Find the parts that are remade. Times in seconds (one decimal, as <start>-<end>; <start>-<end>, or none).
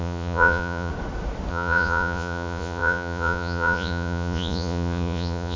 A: 0.0-0.9; 1.5-5.6